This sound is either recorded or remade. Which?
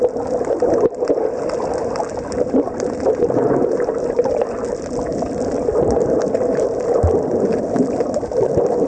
recorded